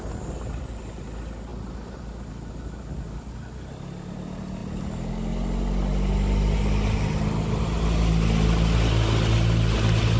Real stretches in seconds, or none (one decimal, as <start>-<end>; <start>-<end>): 0.0-10.2